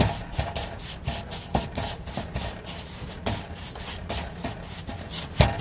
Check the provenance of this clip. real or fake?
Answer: real